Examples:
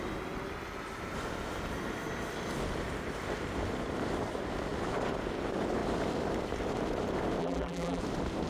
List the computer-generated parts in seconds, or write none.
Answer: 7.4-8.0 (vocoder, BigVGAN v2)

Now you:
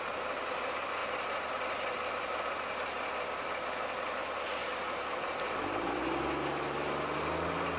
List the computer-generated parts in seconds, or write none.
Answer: none

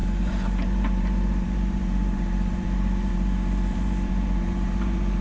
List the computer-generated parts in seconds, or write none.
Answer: 0.0-5.2 (vocoder, BigVGAN v2)

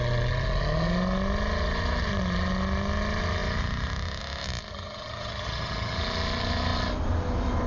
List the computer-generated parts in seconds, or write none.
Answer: 4.7-6.0 (vocoder, HiFi-GAN)

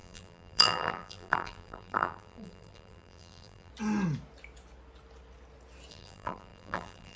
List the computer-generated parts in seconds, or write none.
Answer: 0.0-3.7 (vocoder, BigVGAN v2); 5.9-7.2

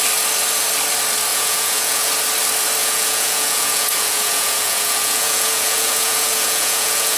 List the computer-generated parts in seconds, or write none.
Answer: 1.3-2.1 (vocoder, Vocos); 2.8-7.2

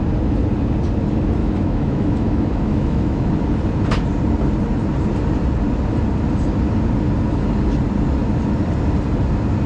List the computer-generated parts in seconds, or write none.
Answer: 1.4-3.3 (autoencoder, DAC-VAE)